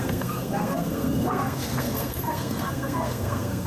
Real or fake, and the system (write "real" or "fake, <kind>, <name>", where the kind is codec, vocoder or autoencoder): fake, codec, SNAC